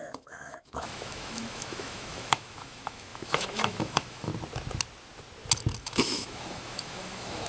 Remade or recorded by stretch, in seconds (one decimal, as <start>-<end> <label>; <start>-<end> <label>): 0.0-4.3 remade; 4.3-5.8 recorded; 5.8-7.5 remade

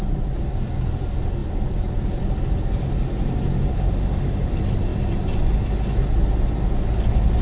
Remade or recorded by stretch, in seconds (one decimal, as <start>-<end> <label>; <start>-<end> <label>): 0.0-3.7 recorded; 3.7-4.4 remade; 4.4-7.4 recorded